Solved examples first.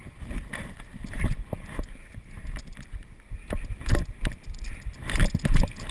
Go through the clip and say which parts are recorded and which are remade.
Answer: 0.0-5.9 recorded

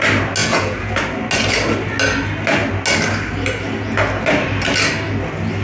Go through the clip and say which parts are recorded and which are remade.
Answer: 0.0-0.4 recorded; 0.4-0.9 remade; 0.9-5.6 recorded

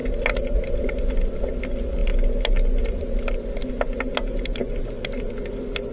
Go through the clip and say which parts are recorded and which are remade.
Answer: 0.0-5.9 recorded

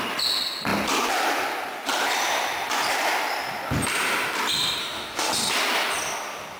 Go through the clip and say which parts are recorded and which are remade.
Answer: 0.0-4.8 recorded; 4.8-5.3 remade; 5.3-6.6 recorded

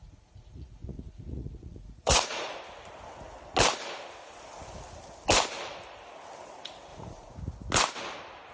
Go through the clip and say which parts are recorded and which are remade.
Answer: 0.0-2.6 remade; 2.6-6.9 recorded; 6.9-7.4 remade; 7.4-8.5 recorded

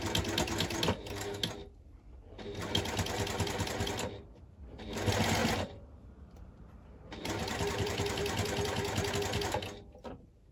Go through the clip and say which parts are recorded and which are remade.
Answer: 0.0-5.4 recorded; 5.4-9.1 remade; 9.1-10.5 recorded

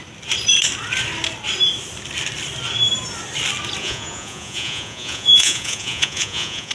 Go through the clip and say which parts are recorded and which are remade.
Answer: 0.0-3.8 recorded; 3.8-6.7 remade

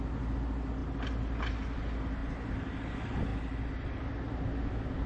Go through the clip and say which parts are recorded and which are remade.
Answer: 0.0-5.1 recorded